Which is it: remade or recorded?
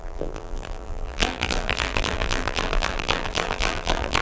remade